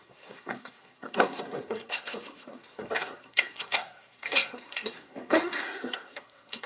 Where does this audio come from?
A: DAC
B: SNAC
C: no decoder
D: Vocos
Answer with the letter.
B